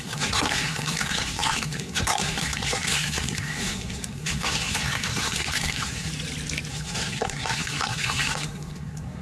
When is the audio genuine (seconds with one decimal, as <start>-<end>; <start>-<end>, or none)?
6.1-6.7